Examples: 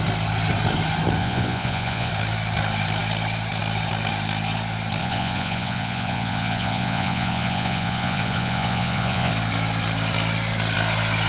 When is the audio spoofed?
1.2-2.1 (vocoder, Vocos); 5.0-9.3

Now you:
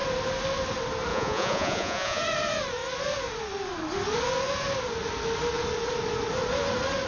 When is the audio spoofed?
1.1-2.2 (vocoder, Vocos)

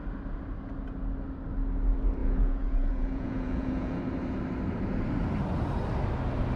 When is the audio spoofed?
2.2-4.0 (vocoder, Vocos)

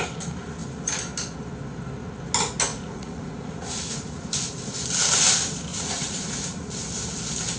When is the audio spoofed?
2.7-4.2 (vocoder, Vocos); 5.7-6.9

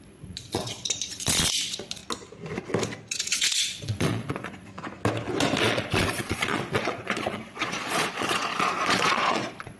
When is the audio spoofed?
0.0-2.0 (vocoder, Vocos); 3.1-4.7; 5.6-9.8

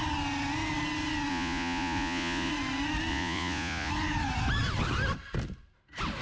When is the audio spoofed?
1.3-2.5 (vocoder, Vocos); 3.1-3.9

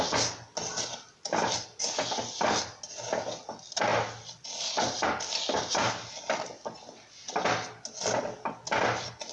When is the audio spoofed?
none